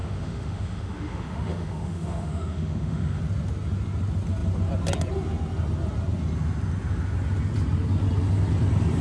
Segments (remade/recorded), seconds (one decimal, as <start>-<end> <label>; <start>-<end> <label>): 0.0-3.2 remade; 3.2-9.0 recorded